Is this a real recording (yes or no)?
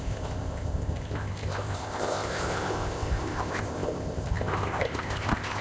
no